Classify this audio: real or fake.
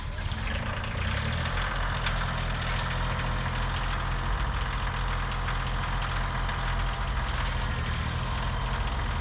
real